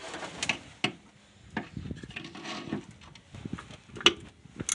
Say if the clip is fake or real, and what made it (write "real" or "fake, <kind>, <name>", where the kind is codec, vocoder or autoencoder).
real